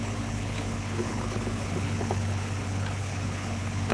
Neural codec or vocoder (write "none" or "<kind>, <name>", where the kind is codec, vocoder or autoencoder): codec, HILCodec